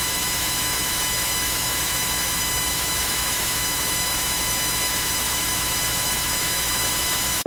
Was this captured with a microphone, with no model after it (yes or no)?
no